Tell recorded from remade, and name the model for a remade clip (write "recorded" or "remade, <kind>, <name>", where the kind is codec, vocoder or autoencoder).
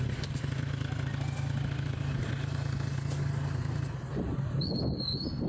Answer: recorded